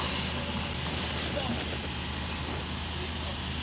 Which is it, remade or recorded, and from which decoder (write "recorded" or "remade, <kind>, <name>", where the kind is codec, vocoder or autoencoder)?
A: recorded